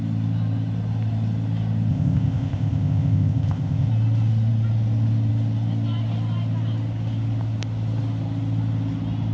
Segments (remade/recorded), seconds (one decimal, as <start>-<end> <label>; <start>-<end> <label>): 0.0-1.9 recorded; 1.9-3.9 remade; 3.9-9.3 recorded